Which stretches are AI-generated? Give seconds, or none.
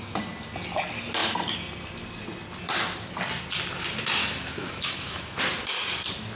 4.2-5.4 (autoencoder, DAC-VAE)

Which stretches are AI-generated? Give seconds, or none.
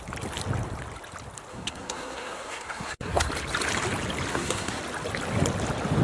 1.5-3.3 (codec, SNAC); 4.3-4.8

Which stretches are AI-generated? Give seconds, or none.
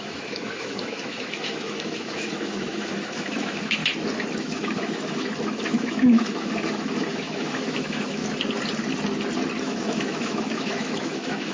0.0-3.8 (autoencoder, DAC-VAE); 4.4-8.2; 9.6-11.5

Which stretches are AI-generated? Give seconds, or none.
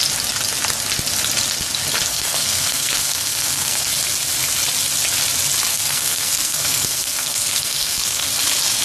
2.1-3.9 (codec, SNAC); 5.7-8.3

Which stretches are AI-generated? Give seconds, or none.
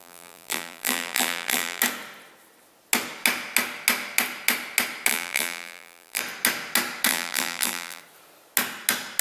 0.0-1.8 (vocoder, BigVGAN v2); 5.1-6.2; 7.1-8.0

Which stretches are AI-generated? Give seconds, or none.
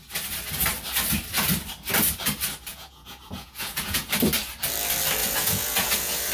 2.7-4.1 (vocoder, Vocos); 5.2-6.3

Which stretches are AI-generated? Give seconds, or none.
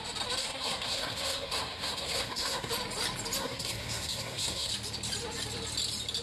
0.4-2.7 (codec, SNAC); 3.4-4.7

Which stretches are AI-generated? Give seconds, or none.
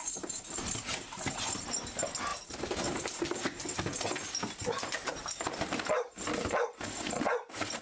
2.3-3.2 (vocoder, BigVGAN v2); 5.1-5.7